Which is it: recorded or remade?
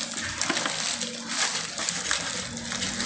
recorded